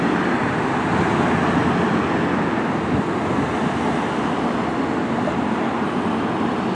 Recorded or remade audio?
recorded